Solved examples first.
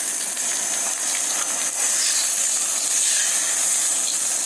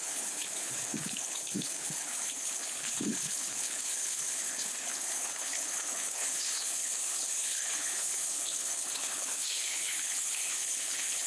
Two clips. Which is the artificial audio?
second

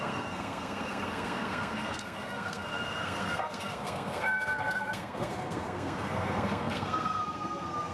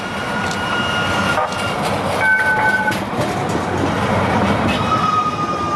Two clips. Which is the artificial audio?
first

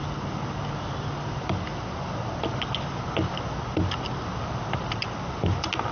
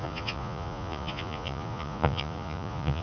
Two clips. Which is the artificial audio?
second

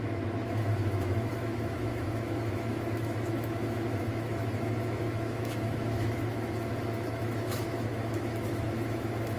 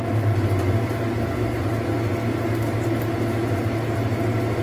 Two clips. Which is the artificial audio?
first